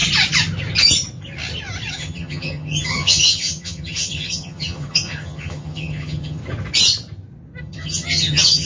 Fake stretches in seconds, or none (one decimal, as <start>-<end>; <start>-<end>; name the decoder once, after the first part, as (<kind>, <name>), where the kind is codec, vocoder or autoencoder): 1.9-6.4 (vocoder, HiFi-GAN); 7.6-8.7